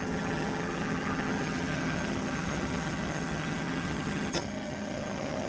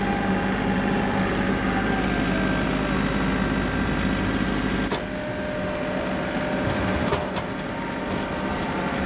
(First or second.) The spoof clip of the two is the first